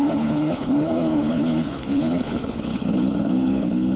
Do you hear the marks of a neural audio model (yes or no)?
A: yes